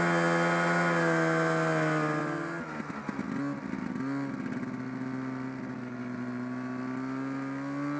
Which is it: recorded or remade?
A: recorded